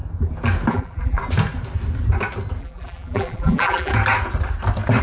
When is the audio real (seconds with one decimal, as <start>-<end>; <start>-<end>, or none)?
0.0-0.7; 1.2-2.6; 3.9-5.0